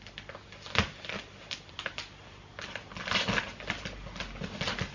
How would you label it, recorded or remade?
recorded